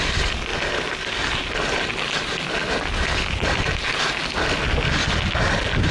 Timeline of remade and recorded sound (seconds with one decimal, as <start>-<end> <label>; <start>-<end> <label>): 0.0-5.9 recorded